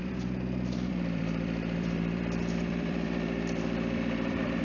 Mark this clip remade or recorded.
remade